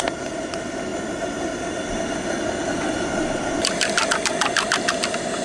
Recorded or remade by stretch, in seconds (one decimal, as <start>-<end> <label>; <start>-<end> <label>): 0.0-5.4 recorded